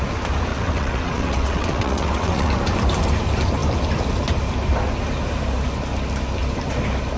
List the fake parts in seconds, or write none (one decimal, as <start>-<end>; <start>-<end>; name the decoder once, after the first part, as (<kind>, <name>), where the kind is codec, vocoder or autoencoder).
0.5-2.5 (vocoder, WaveNeXt)